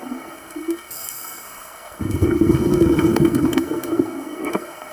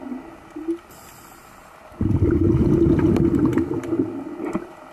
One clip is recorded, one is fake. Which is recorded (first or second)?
second